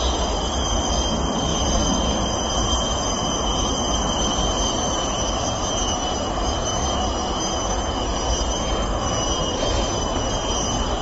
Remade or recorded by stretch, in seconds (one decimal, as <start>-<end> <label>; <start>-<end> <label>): 0.0-11.0 recorded

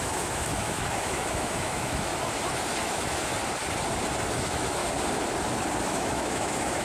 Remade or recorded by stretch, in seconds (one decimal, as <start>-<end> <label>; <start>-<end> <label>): 0.0-2.1 remade; 2.1-2.8 recorded; 2.8-3.3 remade; 3.3-4.3 recorded; 4.3-4.8 remade; 4.8-5.8 recorded; 5.8-6.8 remade

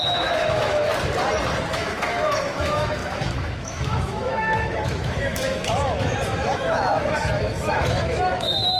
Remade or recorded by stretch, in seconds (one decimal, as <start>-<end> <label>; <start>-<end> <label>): 0.0-0.9 remade; 0.9-1.7 recorded; 1.7-8.8 remade